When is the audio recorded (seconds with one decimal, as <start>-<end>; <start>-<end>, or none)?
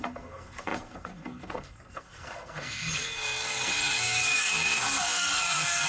none